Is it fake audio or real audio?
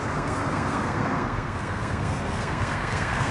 fake